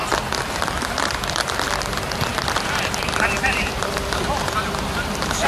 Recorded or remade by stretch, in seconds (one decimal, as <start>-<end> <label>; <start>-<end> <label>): 0.0-2.3 recorded; 2.3-5.5 remade